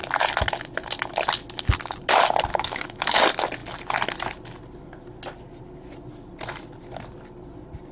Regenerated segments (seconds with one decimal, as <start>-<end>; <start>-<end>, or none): 2.5-3.1